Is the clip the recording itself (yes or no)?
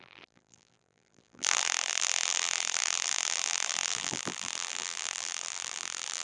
no